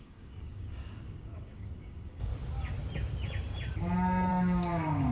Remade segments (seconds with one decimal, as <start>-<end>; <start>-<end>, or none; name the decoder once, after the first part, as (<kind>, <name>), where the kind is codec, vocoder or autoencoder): 0.0-2.3 (codec, DAC); 4.3-5.1